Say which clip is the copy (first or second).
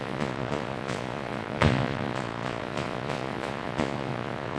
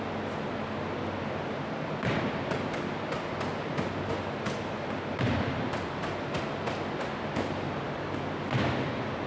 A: first